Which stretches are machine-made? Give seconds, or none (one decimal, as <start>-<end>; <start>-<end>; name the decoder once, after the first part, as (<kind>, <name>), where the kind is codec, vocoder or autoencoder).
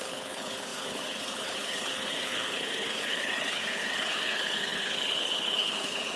0.0-6.2 (codec, HILCodec)